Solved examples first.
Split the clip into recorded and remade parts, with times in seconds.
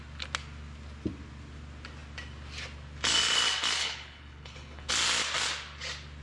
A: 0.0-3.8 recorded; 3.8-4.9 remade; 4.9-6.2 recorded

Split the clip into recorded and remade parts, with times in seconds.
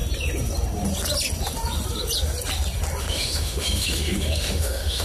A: 0.0-3.0 recorded; 3.0-5.0 remade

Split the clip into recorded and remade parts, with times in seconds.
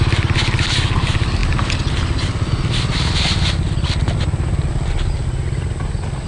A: 0.0-6.3 recorded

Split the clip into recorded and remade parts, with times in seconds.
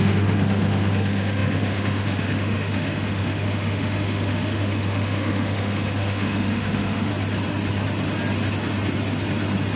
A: 0.0-7.1 remade; 7.1-9.8 recorded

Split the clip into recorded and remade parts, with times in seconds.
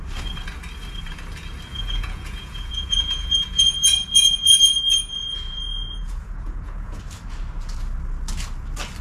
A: 0.0-1.7 recorded; 1.7-7.0 remade; 7.0-9.0 recorded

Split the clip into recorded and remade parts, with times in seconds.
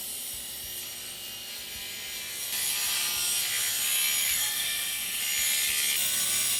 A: 0.0-4.2 recorded; 4.2-5.2 remade; 5.2-6.6 recorded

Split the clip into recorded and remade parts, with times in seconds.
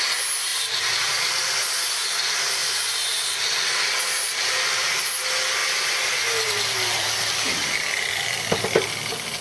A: 0.0-0.5 recorded; 0.5-1.6 remade; 1.6-2.6 recorded; 2.6-3.6 remade; 3.6-5.6 recorded; 5.6-9.4 remade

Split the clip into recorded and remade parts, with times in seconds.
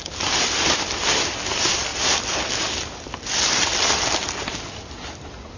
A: 0.0-5.6 recorded